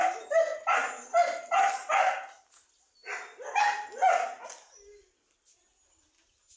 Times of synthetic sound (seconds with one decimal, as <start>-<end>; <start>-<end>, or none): none